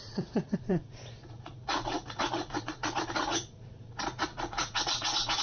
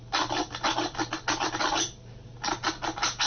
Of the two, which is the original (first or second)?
second